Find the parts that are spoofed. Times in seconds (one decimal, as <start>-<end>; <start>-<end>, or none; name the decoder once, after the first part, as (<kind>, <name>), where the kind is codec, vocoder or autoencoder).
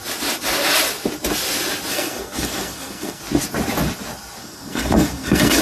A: 1.9-3.2 (codec, SNAC); 4.4-5.6